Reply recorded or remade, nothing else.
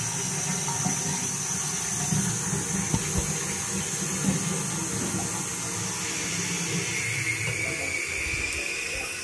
recorded